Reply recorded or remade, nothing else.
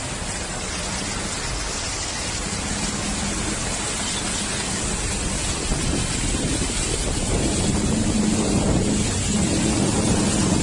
recorded